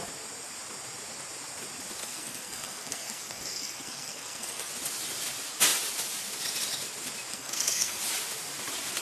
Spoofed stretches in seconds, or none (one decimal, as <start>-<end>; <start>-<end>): 2.0-4.7; 7.3-8.0